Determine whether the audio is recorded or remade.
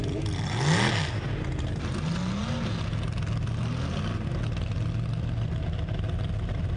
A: recorded